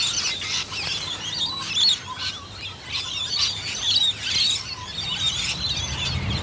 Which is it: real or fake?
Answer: real